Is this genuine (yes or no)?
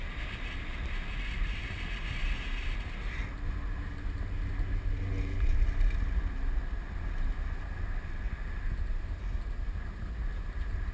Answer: yes